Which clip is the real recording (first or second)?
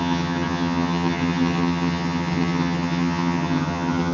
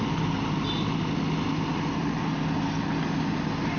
second